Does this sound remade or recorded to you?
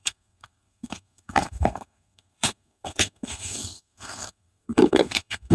remade